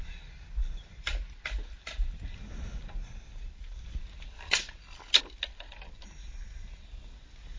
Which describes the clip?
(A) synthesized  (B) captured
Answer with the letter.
B